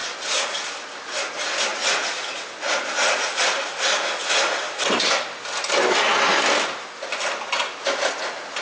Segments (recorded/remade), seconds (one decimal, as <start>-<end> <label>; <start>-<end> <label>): 0.0-1.7 recorded; 1.7-3.6 remade; 3.6-8.6 recorded